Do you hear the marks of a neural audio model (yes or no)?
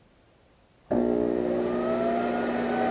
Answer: no